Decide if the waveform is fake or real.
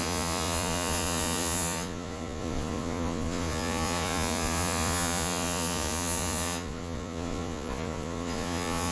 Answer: fake